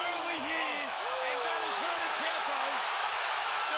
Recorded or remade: remade